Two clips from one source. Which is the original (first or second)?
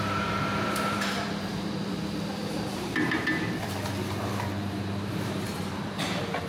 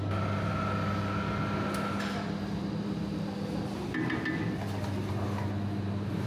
second